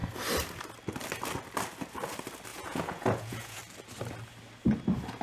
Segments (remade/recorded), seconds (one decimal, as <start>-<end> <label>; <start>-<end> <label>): 0.0-2.5 recorded; 2.5-3.6 remade; 3.6-5.2 recorded